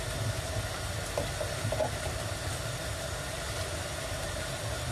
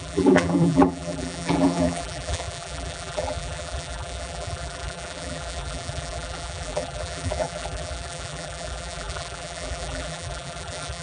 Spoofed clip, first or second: second